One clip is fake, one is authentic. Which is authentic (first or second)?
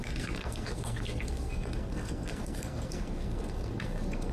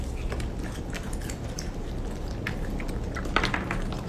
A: second